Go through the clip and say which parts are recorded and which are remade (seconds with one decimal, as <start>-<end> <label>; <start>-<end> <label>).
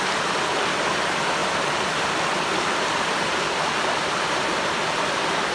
0.0-5.5 recorded